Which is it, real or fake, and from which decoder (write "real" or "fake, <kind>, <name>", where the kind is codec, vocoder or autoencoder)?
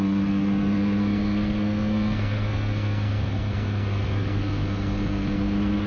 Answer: fake, codec, SNAC